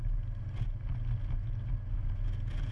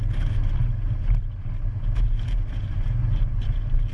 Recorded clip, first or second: first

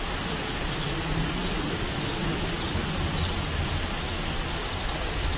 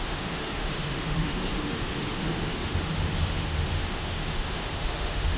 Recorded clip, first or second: first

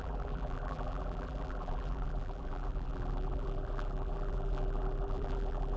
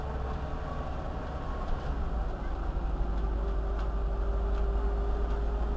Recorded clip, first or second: second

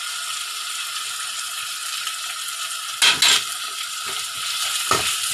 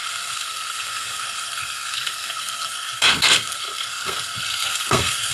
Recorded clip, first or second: first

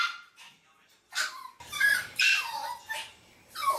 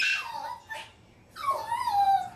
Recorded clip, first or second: second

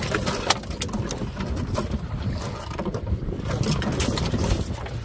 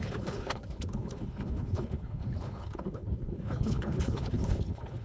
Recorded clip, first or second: first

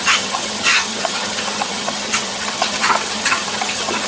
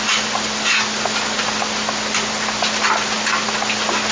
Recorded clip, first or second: second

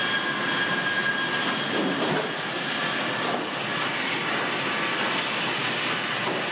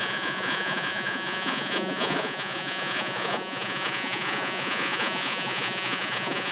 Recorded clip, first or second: first